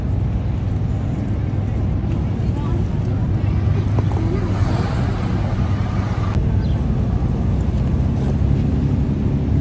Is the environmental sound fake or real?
real